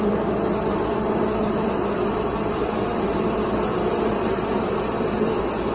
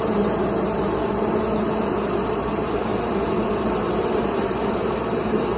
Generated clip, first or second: second